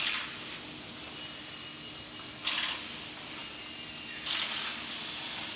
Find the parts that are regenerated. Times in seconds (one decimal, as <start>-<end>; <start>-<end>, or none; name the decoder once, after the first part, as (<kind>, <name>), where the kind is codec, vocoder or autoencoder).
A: none